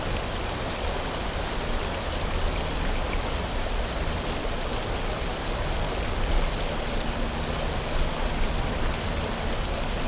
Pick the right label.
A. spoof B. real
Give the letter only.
B